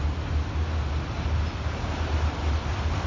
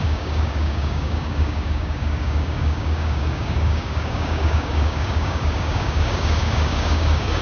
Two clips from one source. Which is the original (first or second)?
first